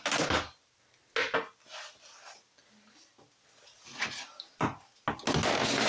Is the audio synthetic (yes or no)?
no